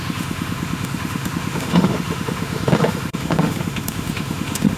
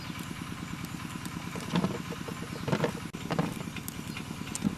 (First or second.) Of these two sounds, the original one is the second